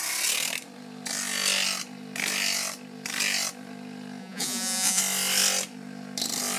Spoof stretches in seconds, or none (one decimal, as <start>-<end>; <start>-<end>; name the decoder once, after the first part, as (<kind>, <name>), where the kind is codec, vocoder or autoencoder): 4.2-5.0 (vocoder, Vocos)